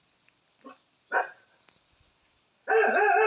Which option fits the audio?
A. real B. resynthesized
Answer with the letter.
A